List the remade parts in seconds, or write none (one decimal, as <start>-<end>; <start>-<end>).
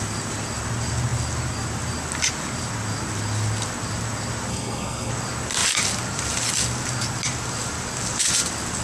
4.5-5.1